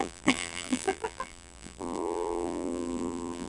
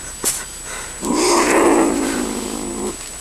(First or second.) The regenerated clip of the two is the first